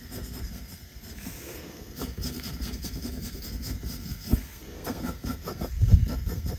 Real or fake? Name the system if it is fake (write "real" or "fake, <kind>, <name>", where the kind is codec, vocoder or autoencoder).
fake, codec, SNAC